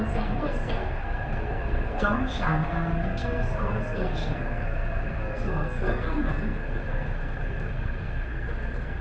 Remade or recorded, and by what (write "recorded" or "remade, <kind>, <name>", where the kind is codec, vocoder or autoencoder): remade, codec, SNAC